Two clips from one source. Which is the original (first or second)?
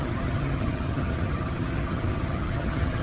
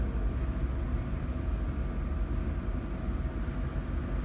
second